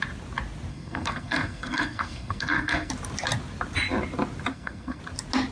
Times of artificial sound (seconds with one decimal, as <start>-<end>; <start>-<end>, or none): 0.7-2.9; 4.5-5.0